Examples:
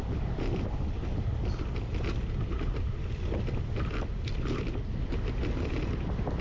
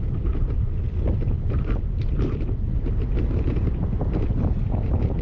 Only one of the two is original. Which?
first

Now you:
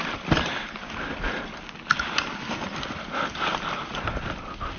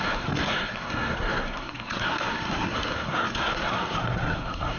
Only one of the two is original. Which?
first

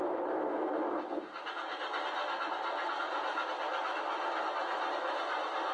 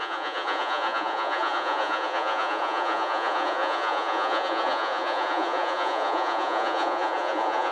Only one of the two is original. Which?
first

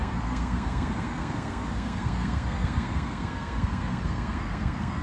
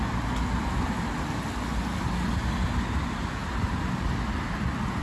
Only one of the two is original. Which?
second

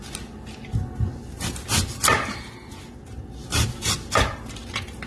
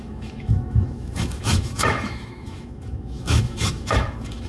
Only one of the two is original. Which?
first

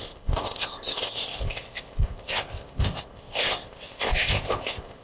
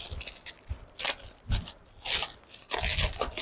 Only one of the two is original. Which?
second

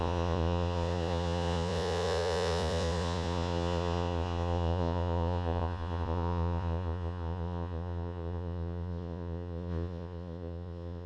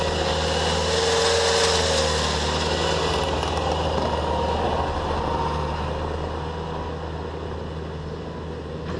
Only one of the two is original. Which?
second